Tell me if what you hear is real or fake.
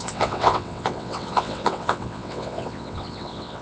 fake